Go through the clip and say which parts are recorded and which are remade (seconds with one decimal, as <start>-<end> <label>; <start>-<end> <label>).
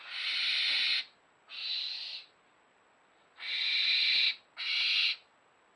0.0-5.8 recorded